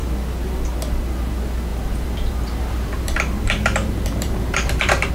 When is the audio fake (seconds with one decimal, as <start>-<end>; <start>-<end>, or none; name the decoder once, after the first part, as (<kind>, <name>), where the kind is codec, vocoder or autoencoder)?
1.7-5.1 (vocoder, BigVGAN v2)